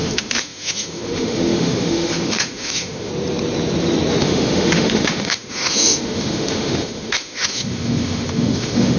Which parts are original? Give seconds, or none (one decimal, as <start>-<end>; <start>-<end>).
3.1-4.2

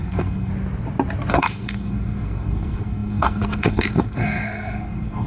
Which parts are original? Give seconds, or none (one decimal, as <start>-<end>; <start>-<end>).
0.5-1.3

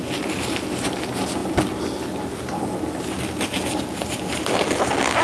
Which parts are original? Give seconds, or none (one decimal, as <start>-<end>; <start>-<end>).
0.0-5.2

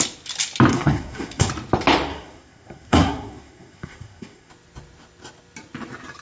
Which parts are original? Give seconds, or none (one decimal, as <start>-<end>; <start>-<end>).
0.0-0.7; 1.5-2.1; 4.5-6.2

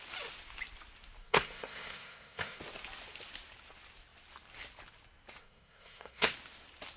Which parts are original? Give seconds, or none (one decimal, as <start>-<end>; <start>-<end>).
0.0-1.2; 2.6-5.4; 6.3-7.0

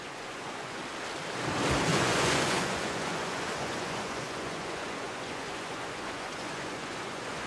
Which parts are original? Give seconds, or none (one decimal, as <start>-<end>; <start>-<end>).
0.8-1.9